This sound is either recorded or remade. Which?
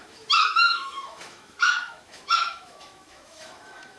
remade